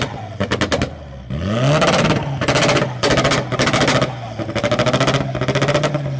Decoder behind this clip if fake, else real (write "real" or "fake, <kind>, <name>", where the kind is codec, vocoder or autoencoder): real